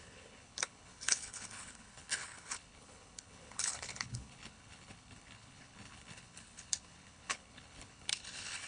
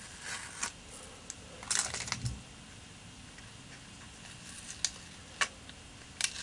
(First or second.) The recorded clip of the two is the second